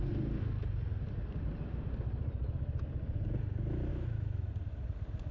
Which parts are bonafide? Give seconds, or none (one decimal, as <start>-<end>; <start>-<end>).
0.0-3.9; 4.5-5.3